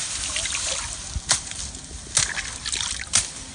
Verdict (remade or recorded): recorded